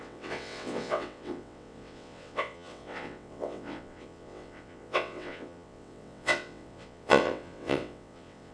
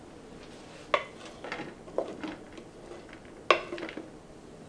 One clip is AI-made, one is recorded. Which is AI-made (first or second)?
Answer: first